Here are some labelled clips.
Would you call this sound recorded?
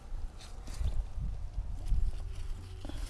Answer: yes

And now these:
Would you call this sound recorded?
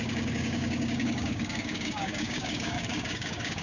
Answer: no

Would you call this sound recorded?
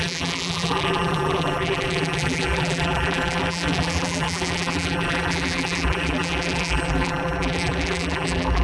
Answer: no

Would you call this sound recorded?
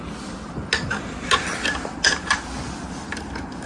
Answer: yes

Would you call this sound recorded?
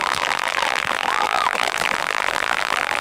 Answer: no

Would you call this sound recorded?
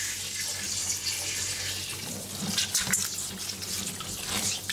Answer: yes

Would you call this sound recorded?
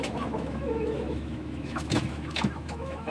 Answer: no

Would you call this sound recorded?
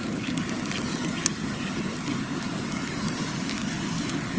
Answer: yes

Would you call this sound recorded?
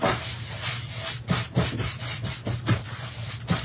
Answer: yes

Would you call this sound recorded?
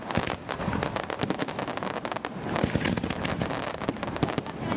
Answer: yes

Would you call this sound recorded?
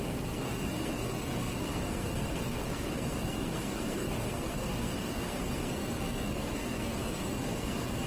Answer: no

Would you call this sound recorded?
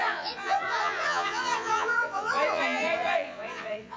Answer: no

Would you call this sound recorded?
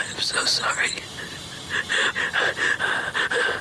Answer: yes